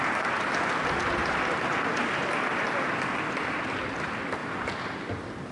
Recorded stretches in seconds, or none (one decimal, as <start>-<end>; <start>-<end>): 0.0-5.5